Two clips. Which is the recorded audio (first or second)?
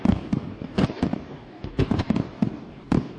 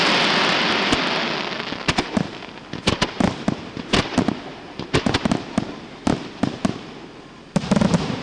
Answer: second